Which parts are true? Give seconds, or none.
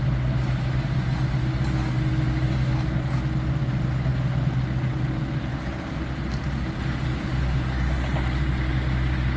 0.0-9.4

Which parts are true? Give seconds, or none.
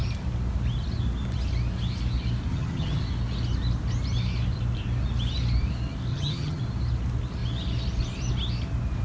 0.0-2.5; 3.0-6.1; 6.6-9.0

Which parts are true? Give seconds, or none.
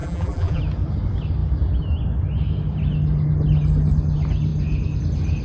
0.6-5.4